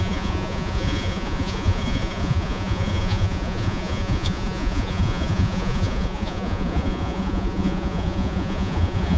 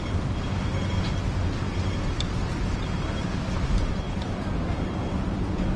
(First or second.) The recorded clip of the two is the second